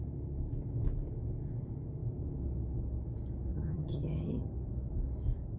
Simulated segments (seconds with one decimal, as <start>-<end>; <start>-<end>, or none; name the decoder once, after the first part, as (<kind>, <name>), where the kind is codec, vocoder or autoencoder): 3.5-4.5 (vocoder, HiFi-GAN)